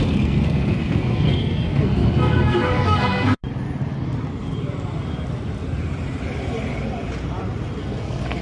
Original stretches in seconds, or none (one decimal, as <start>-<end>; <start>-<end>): 3.4-7.8